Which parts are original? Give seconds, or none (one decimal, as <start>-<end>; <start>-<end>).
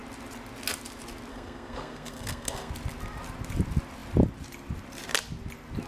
0.0-1.3; 2.7-5.9